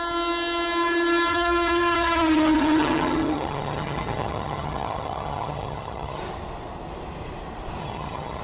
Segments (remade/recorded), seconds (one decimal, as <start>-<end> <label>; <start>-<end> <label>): 0.0-1.3 recorded; 1.3-6.2 remade; 6.2-7.8 recorded; 7.8-8.4 remade